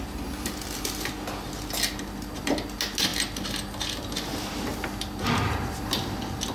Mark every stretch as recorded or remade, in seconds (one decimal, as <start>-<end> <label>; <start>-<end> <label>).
0.0-6.5 recorded